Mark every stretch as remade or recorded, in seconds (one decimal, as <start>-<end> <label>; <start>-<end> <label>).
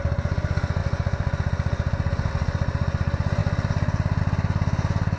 0.0-5.2 recorded